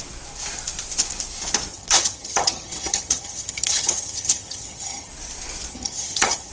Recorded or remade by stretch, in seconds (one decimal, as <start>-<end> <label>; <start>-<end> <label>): 0.0-1.7 recorded; 1.7-5.1 remade; 5.1-5.7 recorded; 5.7-6.5 remade